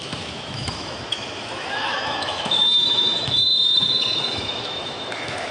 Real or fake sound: fake